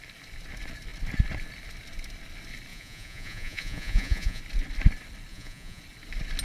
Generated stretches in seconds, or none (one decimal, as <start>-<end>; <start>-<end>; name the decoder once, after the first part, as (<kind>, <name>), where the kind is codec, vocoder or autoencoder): 2.7-4.4 (vocoder, Vocos); 5.3-5.8